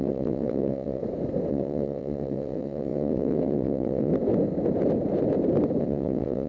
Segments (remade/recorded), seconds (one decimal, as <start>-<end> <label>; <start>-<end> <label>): 0.0-1.0 remade; 1.0-1.5 recorded; 1.5-4.1 remade; 4.1-5.8 recorded; 5.8-6.5 remade